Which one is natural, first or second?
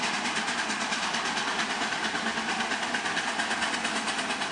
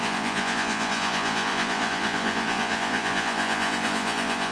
first